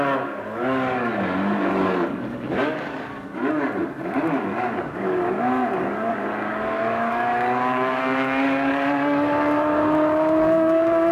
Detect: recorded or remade remade